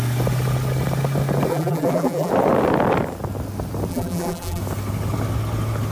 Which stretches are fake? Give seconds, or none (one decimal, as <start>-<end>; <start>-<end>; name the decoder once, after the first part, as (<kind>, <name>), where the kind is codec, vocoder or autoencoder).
1.5-2.3 (vocoder, BigVGAN v2); 3.9-4.6